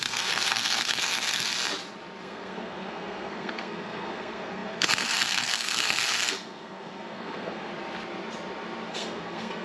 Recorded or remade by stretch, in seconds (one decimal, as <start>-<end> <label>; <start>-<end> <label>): 0.0-1.5 remade; 1.5-2.2 recorded; 2.2-7.7 remade; 7.7-8.9 recorded; 8.9-9.6 remade